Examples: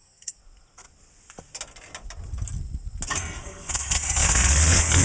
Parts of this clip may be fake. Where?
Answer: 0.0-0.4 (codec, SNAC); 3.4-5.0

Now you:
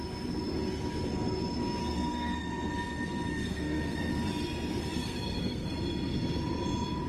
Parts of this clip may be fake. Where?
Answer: 1.8-2.7 (codec, SNAC); 3.3-4.1; 4.8-5.7

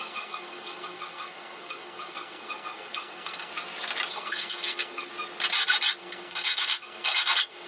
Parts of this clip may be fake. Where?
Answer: 0.0-3.5 (codec, SNAC); 4.1-5.1; 6.0-7.7